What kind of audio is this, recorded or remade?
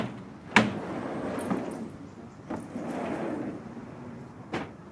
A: recorded